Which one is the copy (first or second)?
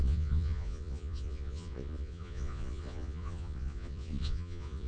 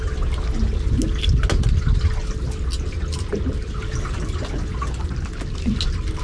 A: first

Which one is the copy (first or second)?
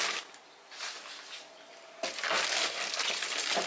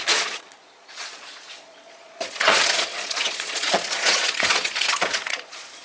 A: second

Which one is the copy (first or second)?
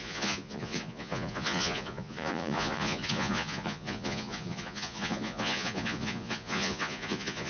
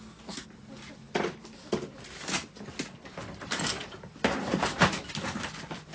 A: first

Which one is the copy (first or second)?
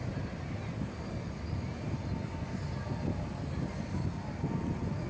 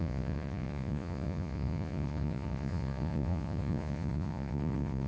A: second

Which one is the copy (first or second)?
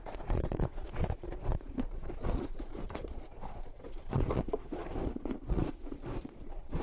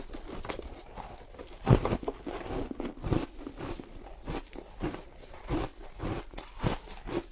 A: first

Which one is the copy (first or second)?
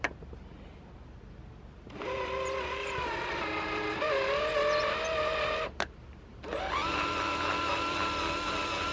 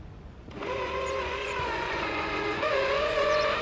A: second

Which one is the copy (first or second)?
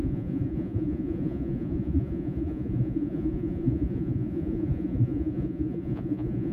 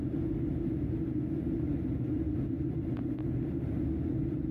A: first